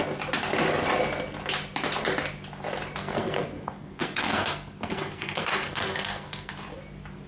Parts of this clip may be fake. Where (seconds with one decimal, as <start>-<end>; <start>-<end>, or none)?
3.0-6.5